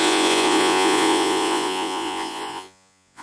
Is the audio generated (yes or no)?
yes